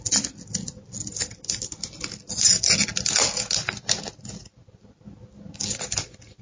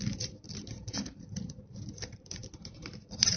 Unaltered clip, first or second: first